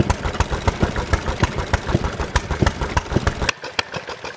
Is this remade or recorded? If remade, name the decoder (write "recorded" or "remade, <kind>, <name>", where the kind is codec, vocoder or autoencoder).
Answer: recorded